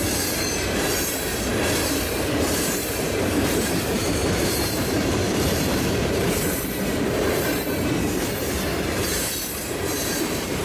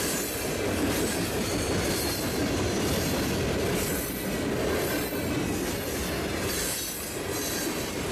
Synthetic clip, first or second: first